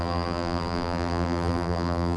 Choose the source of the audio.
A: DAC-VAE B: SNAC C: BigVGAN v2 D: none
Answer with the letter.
C